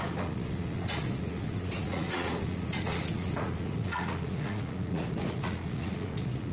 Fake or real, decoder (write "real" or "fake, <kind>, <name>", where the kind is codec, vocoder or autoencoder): fake, vocoder, Vocos